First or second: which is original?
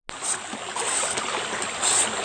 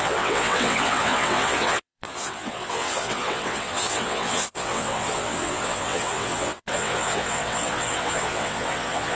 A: first